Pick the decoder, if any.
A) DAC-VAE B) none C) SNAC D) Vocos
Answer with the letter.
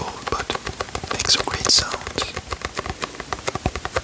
B